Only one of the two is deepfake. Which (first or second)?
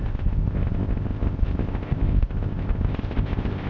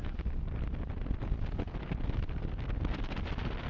first